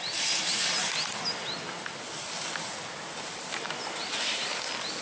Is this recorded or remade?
recorded